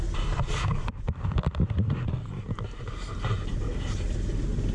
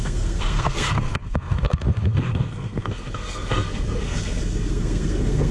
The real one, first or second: first